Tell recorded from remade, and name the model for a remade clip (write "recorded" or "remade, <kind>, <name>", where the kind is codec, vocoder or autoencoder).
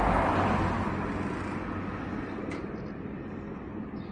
recorded